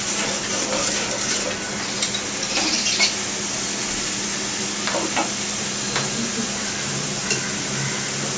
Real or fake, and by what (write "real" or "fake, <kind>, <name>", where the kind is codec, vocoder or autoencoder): real